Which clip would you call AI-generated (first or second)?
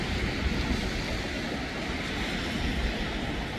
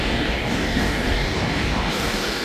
second